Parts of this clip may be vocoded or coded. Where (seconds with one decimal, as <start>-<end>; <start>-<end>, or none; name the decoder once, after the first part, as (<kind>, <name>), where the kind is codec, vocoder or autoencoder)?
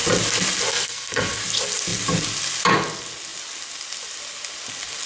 0.7-1.4 (codec, SNAC)